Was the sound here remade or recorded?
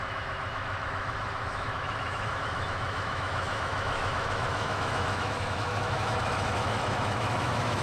remade